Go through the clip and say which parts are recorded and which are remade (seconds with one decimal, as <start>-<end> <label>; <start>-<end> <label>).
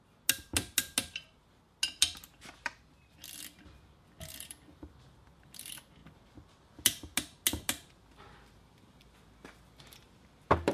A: 0.0-10.7 recorded